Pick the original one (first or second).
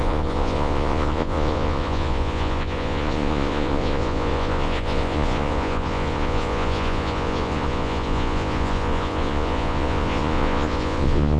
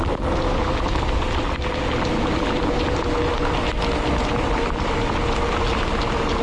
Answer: second